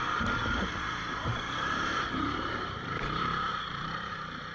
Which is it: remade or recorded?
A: remade